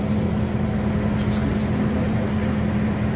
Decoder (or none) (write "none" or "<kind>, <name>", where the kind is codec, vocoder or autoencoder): none